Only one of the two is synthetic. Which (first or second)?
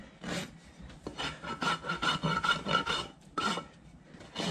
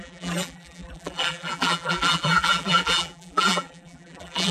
second